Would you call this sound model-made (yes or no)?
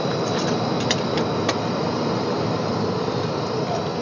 no